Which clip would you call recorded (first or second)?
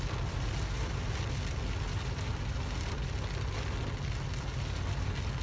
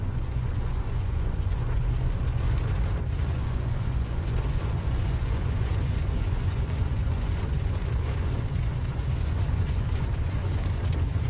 first